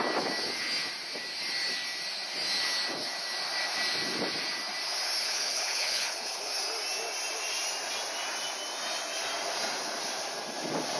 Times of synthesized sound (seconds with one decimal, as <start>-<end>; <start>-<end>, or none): 5.2-6.5